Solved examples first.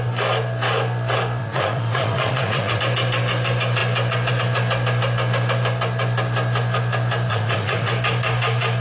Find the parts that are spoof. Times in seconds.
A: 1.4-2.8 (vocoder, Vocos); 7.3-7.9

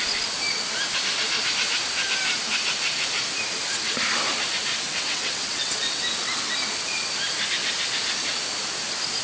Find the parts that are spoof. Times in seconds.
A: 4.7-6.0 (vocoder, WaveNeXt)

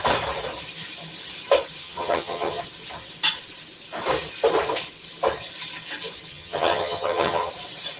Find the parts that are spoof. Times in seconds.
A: 1.8-2.6 (vocoder, HiFi-GAN); 6.3-7.5

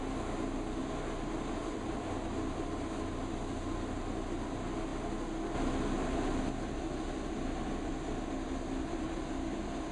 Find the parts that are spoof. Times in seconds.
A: none